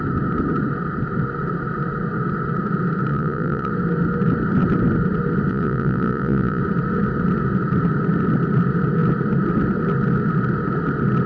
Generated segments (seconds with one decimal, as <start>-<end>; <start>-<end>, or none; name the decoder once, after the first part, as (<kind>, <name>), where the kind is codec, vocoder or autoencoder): 3.1-3.7 (vocoder, Vocos); 5.5-6.6